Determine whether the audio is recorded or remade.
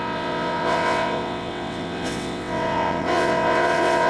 remade